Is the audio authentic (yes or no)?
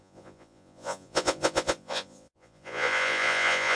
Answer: no